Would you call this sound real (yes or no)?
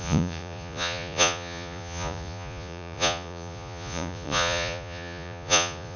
no